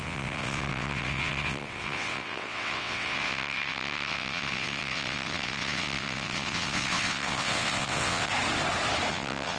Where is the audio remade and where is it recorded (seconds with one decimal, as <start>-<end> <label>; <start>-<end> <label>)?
0.0-8.3 remade; 8.3-9.1 recorded; 9.1-9.6 remade